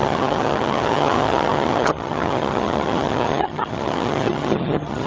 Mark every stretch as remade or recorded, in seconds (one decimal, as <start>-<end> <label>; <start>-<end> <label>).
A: 0.0-5.1 remade